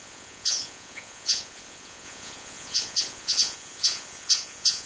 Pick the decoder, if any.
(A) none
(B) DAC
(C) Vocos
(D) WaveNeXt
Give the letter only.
C